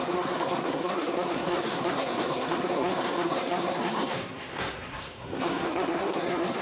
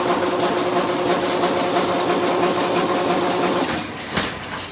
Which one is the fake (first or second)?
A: first